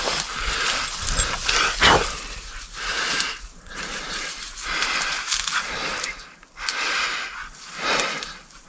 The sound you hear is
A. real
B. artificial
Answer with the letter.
A